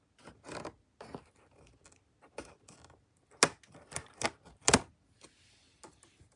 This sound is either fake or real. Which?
real